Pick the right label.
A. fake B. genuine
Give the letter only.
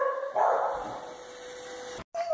B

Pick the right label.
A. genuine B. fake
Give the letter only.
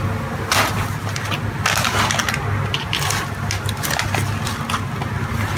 A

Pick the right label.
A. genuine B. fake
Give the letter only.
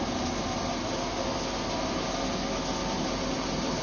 A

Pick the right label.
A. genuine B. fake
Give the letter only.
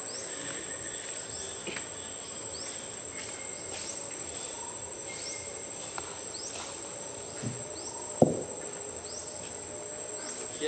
A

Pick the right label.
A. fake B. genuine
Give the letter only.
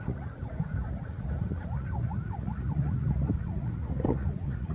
A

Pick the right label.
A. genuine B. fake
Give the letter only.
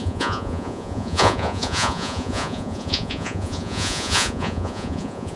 B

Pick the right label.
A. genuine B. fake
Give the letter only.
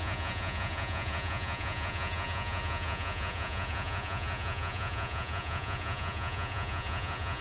B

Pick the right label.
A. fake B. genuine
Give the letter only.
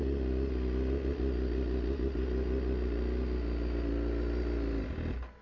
B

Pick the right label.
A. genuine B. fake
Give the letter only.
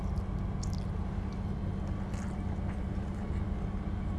A